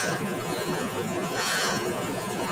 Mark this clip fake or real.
fake